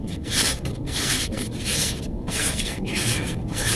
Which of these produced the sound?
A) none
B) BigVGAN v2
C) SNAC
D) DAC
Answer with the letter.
C